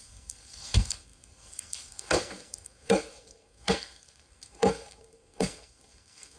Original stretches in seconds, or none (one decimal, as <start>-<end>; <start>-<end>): none